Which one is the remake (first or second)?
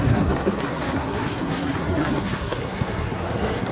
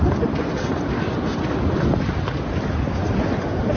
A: first